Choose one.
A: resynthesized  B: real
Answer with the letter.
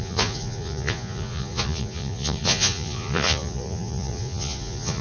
A